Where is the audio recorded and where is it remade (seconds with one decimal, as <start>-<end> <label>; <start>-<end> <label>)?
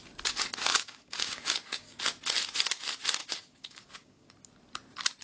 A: 0.0-0.7 recorded; 0.7-2.0 remade; 2.0-3.2 recorded; 3.2-4.3 remade; 4.3-5.2 recorded